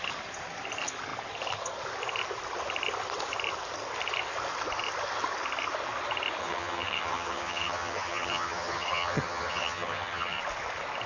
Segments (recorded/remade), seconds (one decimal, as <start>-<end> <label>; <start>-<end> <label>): 0.0-6.4 recorded; 6.4-10.4 remade; 10.4-11.1 recorded